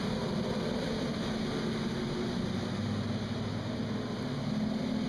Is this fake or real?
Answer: real